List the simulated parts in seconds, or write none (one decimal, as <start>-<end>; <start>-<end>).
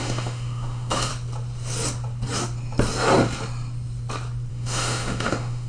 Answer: 0.0-1.1; 4.5-5.7